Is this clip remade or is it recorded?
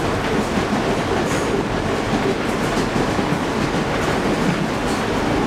recorded